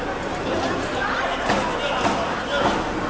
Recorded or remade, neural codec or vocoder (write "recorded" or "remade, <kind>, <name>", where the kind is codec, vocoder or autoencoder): recorded